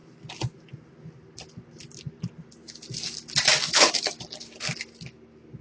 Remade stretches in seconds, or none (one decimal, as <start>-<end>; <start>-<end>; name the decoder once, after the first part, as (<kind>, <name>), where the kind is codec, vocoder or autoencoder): 3.6-4.2 (autoencoder, DAC-VAE)